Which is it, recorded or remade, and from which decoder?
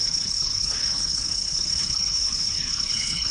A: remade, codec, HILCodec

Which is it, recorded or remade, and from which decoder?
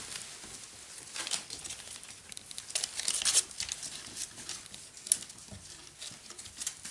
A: recorded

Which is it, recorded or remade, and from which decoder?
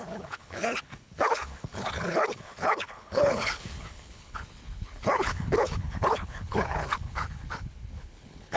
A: remade, codec, HILCodec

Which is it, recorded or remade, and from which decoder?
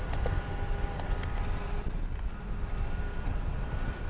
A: recorded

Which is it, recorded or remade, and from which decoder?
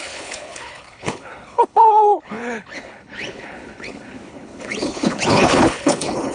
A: remade, codec, HILCodec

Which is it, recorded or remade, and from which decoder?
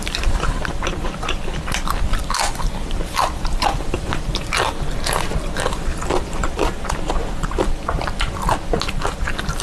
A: recorded